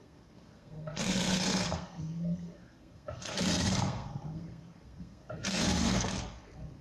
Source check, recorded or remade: remade